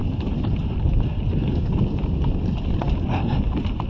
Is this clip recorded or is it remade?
recorded